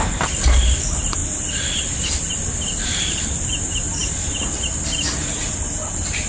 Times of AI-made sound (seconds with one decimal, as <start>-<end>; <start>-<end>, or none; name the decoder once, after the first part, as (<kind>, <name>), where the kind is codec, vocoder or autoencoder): 1.2-3.5 (vocoder, BigVGAN v2)